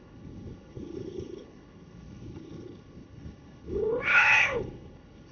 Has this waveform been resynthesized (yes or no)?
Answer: yes